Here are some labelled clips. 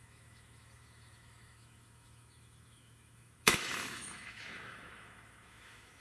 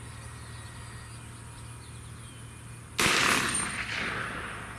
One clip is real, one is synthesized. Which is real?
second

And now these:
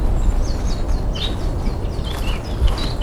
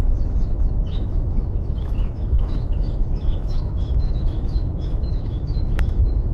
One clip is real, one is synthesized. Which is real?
first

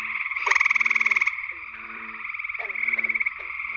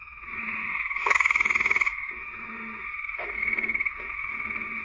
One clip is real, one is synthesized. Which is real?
first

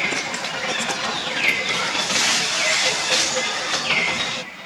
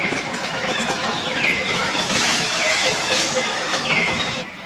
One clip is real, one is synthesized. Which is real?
first